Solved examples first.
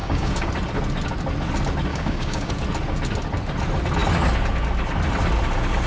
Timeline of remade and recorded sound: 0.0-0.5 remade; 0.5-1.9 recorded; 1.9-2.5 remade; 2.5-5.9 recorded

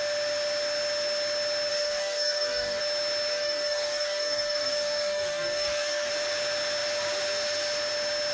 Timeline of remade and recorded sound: 0.0-1.7 recorded; 1.7-2.8 remade; 2.8-3.3 recorded; 3.3-6.1 remade; 6.1-8.3 recorded

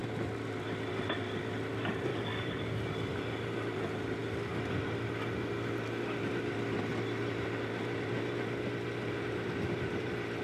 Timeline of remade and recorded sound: 0.0-2.1 recorded; 2.1-2.6 remade; 2.6-10.4 recorded